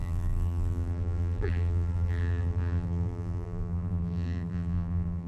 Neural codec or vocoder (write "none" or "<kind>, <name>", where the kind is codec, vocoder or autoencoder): vocoder, BigVGAN v2